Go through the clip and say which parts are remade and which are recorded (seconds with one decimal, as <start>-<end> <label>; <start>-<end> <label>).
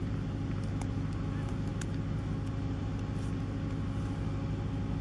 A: 0.0-5.0 recorded